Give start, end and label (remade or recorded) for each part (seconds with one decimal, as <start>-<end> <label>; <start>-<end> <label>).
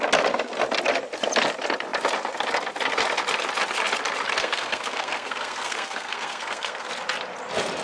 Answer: 0.0-4.4 recorded; 4.4-6.9 remade; 6.9-7.8 recorded